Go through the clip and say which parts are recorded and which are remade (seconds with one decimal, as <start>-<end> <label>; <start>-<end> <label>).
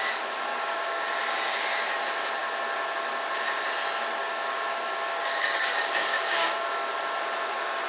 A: 0.0-0.5 recorded; 0.5-1.0 remade; 1.0-4.2 recorded; 4.2-6.9 remade; 6.9-7.9 recorded